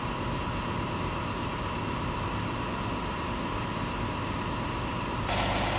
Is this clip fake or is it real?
real